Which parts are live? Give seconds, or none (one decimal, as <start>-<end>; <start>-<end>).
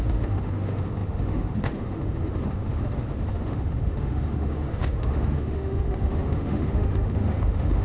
none